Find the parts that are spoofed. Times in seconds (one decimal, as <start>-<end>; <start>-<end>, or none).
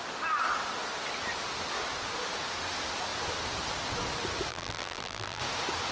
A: 4.5-5.4